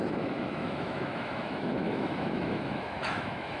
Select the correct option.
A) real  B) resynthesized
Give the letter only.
B